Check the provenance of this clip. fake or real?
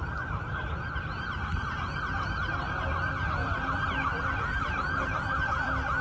fake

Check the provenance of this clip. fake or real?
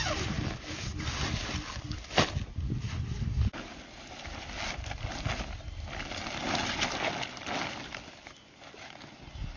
real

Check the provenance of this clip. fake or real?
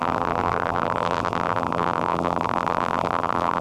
fake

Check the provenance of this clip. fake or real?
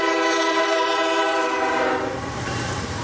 fake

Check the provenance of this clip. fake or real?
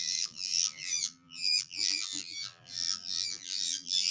fake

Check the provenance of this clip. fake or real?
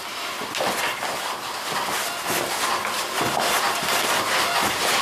real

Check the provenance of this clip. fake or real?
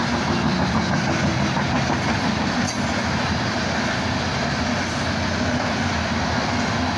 real